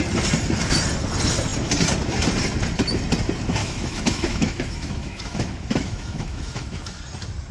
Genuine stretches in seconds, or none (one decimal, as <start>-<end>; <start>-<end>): 0.0-3.6; 7.0-7.5

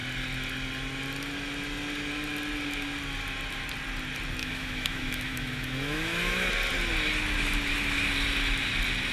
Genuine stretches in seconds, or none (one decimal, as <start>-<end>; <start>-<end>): 0.0-4.4; 6.5-9.1

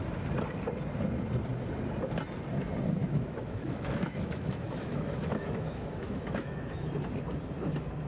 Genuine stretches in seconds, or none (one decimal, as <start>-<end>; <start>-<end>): 0.0-3.0; 6.9-8.1